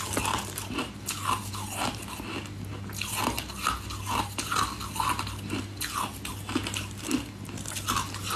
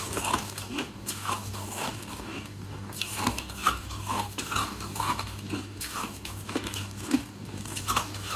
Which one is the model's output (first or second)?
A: second